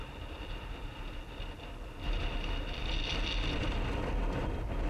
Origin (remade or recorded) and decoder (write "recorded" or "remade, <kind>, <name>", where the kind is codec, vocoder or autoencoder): recorded